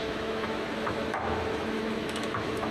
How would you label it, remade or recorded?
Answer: remade